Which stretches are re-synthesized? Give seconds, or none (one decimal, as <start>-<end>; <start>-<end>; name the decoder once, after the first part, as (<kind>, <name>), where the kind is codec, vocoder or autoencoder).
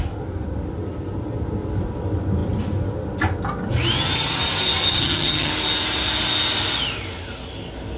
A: 4.9-5.5 (vocoder, HiFi-GAN)